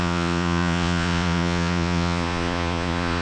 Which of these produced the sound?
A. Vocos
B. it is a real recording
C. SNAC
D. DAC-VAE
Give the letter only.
A